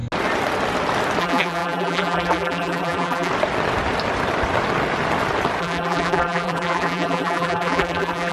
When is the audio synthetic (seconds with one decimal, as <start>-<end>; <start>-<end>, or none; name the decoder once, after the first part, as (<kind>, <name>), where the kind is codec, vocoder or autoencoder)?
1.2-3.3 (vocoder, BigVGAN v2); 5.6-8.3